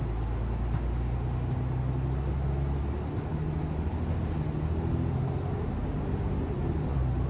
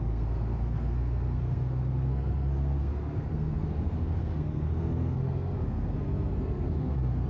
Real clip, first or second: first